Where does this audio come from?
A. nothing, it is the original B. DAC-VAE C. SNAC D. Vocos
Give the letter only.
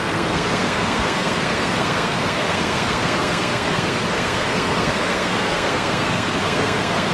C